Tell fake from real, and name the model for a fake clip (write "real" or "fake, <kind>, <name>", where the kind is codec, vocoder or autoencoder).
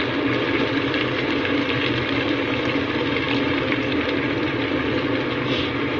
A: real